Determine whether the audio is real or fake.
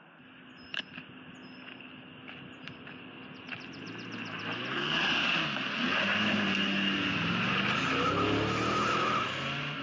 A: real